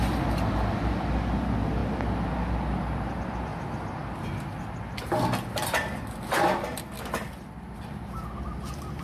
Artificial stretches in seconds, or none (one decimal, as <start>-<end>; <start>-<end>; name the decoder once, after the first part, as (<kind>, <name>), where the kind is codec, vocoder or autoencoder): none